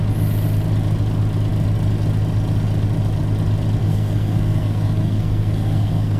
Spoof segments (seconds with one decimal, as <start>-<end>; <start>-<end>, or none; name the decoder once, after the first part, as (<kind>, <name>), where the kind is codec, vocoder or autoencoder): 3.8-6.2 (codec, SNAC)